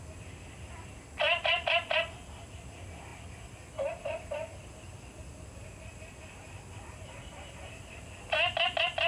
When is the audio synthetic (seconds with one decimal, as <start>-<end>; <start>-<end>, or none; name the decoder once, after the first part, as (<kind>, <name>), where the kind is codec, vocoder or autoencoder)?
0.0-9.1 (vocoder, BigVGAN v2)